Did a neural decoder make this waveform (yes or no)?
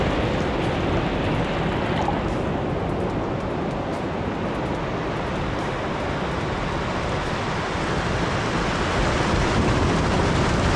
no